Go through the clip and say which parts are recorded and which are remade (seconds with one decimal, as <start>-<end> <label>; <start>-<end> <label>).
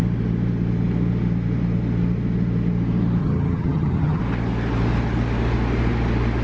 0.0-3.2 recorded; 3.2-4.2 remade; 4.2-6.4 recorded